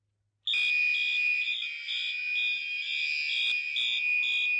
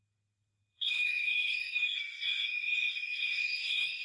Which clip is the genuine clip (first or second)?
first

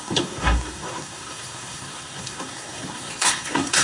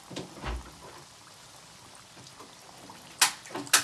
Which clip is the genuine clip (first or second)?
second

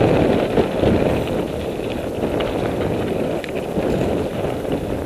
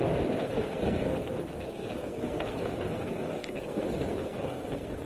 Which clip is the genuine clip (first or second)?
first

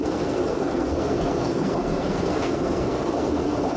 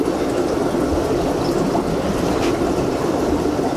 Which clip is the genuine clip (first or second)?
second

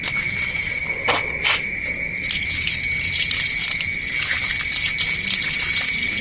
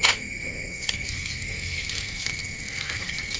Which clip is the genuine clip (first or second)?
first